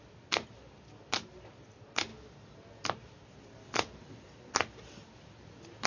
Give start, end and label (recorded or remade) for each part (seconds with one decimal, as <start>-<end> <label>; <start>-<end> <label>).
0.0-5.9 recorded